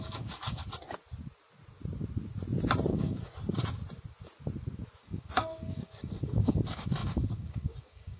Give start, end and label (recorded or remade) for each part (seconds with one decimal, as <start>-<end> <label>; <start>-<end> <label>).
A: 0.0-0.6 remade; 0.6-2.9 recorded; 2.9-3.3 remade; 3.3-5.0 recorded; 5.0-8.2 remade